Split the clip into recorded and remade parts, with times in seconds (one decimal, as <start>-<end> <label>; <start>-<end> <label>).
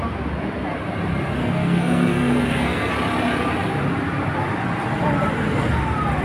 0.0-1.4 recorded; 1.4-2.9 remade; 2.9-6.2 recorded